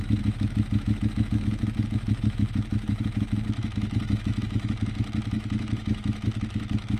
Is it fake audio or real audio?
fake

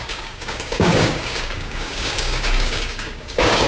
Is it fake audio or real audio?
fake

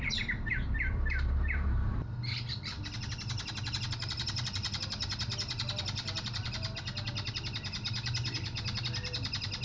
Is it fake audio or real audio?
fake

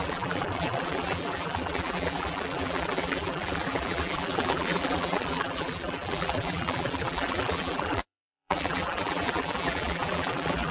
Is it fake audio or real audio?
fake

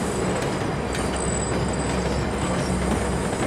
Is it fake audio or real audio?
real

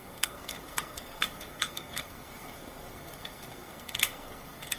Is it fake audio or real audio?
fake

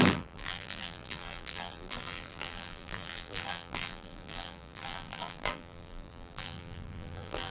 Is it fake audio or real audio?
fake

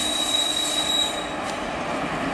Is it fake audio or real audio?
real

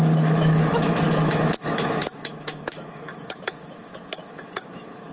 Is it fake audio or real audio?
fake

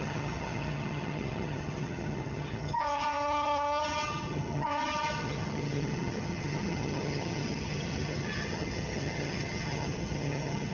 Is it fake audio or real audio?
fake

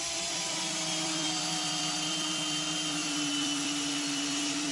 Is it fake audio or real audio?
fake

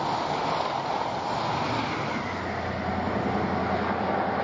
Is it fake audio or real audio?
real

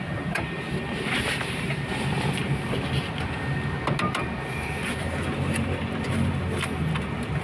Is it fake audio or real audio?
real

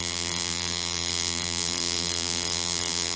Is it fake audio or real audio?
fake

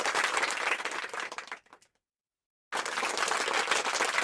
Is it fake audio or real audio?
real